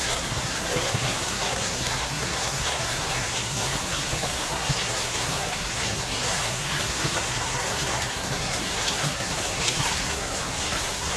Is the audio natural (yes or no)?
no